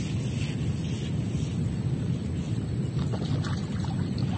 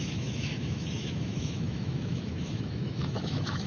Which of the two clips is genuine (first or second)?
first